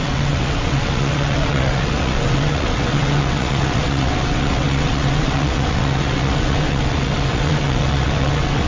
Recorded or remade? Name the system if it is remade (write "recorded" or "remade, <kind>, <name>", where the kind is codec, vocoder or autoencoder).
remade, vocoder, WaveNeXt